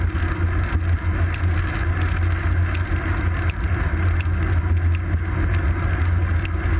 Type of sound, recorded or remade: recorded